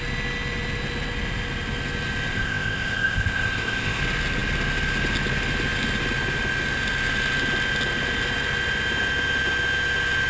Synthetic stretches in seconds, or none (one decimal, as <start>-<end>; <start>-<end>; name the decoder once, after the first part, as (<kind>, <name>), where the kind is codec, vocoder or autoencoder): 2.3-4.0 (codec, ZipCodec)